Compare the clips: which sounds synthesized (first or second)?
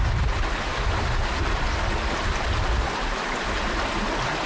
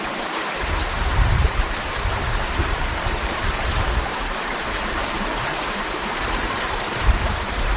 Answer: second